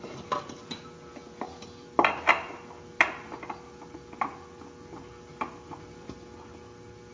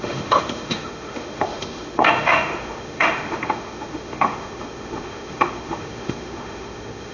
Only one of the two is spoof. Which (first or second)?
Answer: second